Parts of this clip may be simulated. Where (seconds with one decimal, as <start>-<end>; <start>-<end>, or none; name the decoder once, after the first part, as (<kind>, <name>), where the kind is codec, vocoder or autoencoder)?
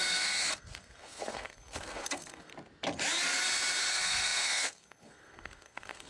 0.0-2.5 (codec, SNAC); 3.9-6.1